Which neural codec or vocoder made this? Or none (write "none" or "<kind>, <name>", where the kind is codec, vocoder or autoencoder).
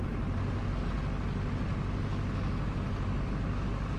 none